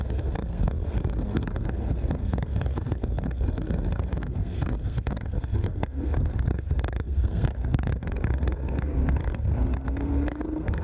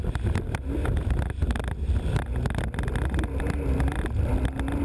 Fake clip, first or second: first